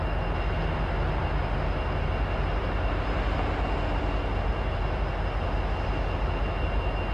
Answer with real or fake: real